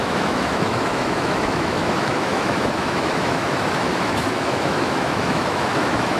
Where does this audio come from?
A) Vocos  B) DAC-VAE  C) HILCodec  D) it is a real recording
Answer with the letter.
B